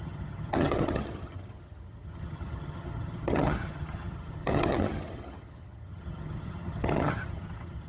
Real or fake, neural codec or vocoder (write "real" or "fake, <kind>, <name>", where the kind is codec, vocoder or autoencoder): fake, vocoder, HiFi-GAN